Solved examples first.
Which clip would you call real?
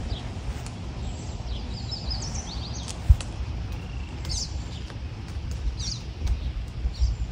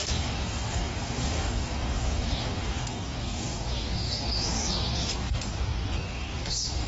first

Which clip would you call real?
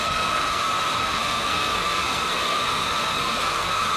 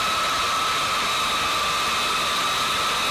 second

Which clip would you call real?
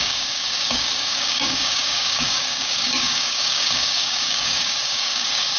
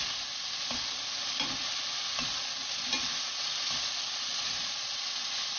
second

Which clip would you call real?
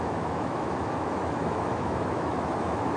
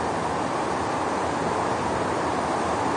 second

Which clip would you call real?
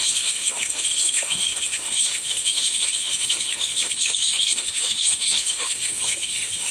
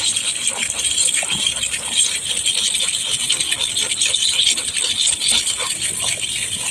second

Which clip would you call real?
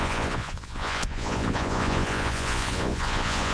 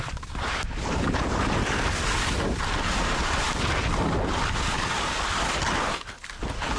second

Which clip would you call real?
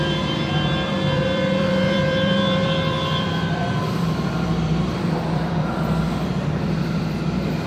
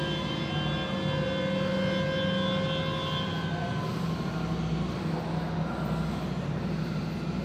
second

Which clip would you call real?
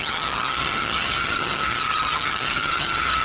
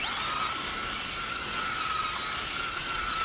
second